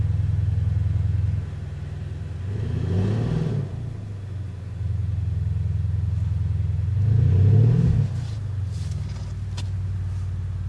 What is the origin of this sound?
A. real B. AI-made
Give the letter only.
A